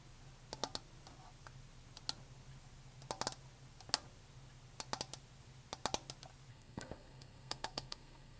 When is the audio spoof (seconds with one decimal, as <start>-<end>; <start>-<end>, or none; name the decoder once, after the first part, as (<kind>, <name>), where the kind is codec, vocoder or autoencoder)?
6.5-8.4 (codec, SNAC)